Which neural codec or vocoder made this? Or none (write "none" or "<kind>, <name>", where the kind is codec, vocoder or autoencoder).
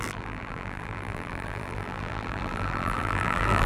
vocoder, BigVGAN v2